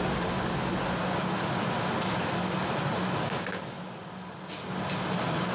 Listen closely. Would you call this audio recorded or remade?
recorded